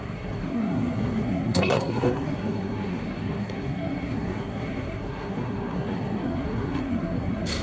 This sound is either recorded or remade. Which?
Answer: remade